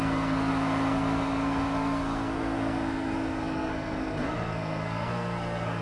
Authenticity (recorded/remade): remade